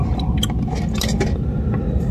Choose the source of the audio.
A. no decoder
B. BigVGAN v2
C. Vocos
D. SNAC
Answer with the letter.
A